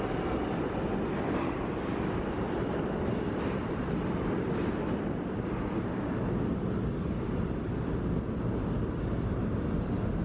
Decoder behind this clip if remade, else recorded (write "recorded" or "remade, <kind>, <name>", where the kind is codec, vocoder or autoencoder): recorded